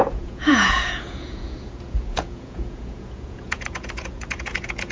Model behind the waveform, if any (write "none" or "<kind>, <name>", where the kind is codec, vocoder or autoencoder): vocoder, Vocos